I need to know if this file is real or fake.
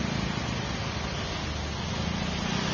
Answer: real